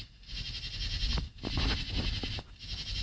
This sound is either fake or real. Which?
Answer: real